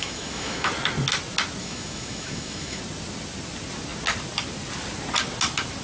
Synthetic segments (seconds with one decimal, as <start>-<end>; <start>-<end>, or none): 0.0-0.7; 1.6-2.8